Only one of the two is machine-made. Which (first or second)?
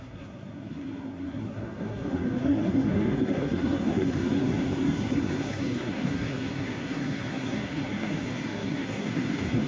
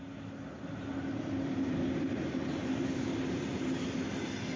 first